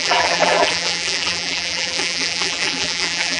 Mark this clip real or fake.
fake